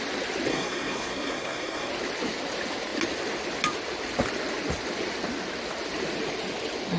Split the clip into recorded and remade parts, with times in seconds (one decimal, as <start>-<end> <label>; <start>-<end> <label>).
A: 0.0-0.5 recorded; 0.5-1.9 remade; 1.9-7.0 recorded